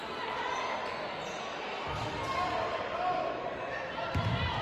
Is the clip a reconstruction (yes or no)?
no